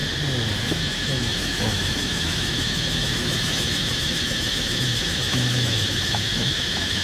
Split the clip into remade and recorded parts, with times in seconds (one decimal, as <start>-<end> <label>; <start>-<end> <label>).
0.0-0.6 recorded; 0.6-7.0 remade